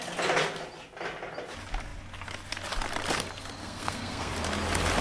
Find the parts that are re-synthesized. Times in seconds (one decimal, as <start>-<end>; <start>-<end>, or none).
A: 3.6-4.3